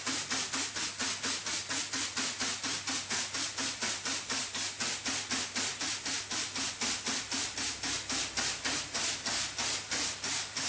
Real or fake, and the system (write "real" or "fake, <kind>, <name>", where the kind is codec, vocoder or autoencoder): real